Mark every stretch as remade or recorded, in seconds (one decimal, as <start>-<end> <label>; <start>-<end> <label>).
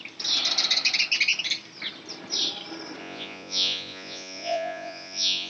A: 0.0-3.0 recorded; 3.0-5.5 remade